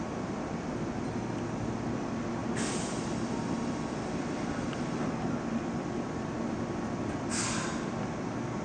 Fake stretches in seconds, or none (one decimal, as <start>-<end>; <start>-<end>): none